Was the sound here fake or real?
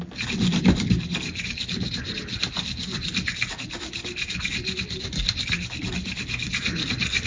real